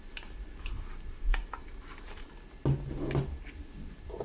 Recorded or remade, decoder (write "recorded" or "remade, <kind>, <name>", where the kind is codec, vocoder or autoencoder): recorded